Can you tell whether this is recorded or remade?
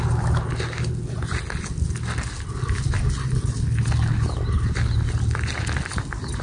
recorded